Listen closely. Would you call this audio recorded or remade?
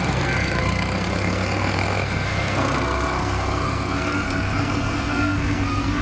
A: remade